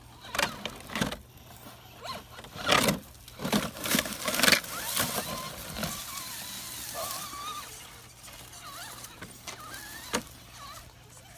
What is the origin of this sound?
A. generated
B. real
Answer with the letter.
B